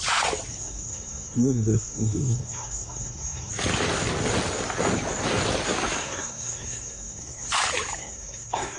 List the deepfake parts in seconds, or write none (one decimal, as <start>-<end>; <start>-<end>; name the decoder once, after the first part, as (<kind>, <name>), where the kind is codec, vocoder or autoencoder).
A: 0.5-3.5 (codec, SNAC); 6.0-7.5; 8.0-8.8